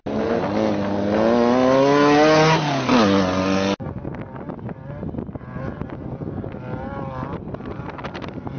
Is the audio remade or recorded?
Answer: recorded